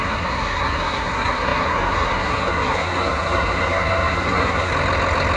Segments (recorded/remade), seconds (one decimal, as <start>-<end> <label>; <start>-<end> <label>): 0.0-4.7 remade; 4.7-5.4 recorded